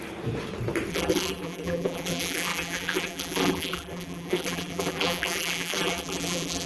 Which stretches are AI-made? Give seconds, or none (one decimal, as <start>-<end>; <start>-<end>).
0.9-6.7